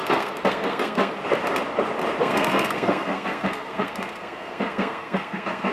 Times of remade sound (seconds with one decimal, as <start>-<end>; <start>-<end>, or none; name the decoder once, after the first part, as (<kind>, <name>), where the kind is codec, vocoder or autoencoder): 0.0-1.2 (codec, SNAC); 2.2-5.7